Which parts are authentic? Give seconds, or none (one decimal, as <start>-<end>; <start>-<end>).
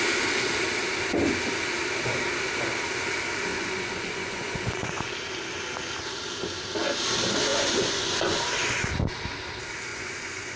0.0-3.5; 5.1-7.5; 8.4-9.9